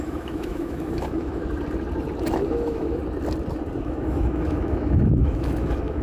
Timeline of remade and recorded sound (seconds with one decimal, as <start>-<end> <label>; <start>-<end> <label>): 0.0-1.4 remade; 1.4-2.2 recorded; 2.2-3.0 remade; 3.0-3.8 recorded; 3.8-6.0 remade